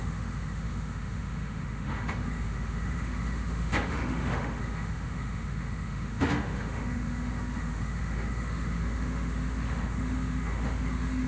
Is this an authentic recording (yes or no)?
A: no